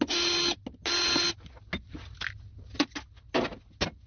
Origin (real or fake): real